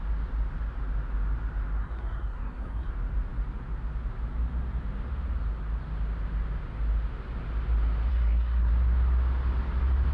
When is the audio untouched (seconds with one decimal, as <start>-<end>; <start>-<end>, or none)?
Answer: 0.0-1.8; 2.9-8.1; 8.7-10.1